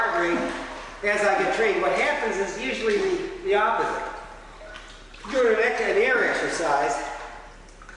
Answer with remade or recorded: recorded